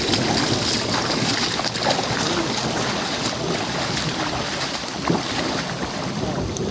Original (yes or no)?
yes